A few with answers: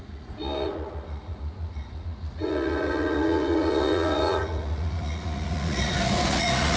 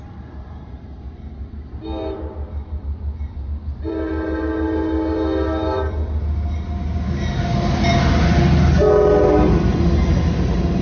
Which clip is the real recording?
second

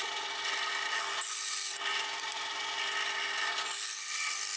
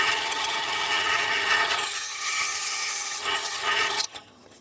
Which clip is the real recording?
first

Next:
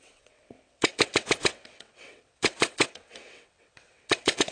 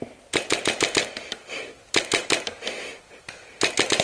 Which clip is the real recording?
second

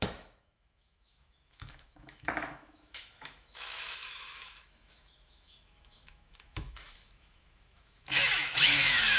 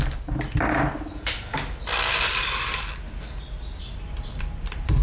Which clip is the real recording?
second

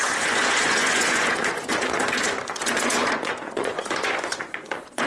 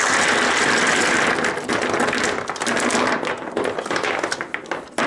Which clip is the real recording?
second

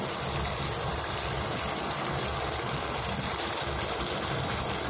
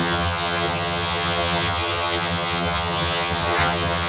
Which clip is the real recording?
first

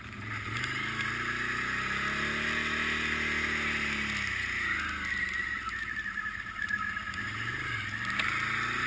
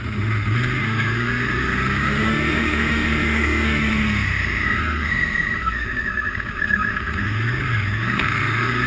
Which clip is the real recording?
first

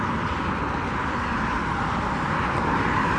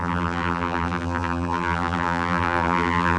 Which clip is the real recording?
first